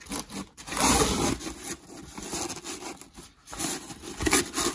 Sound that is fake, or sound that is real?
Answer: real